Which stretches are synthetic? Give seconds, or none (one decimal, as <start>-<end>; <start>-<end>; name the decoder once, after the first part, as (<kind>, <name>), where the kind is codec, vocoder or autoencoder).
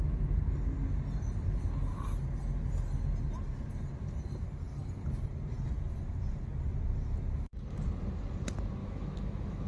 8.8-9.7 (autoencoder, DAC-VAE)